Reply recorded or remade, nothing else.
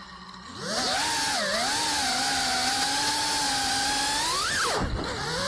recorded